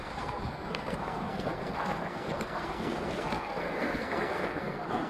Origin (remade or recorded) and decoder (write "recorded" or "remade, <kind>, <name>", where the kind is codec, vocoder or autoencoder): remade, codec, SNAC